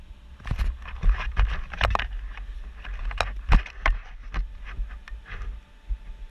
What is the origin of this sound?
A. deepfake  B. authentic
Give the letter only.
B